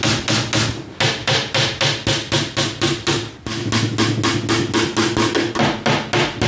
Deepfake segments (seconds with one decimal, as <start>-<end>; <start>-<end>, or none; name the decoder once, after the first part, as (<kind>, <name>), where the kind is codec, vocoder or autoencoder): 1.2-1.8 (vocoder, BigVGAN v2)